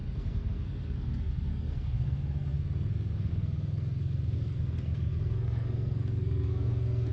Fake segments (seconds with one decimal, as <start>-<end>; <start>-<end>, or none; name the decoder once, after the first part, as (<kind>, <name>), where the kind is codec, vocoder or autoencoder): 0.0-7.1 (codec, SNAC)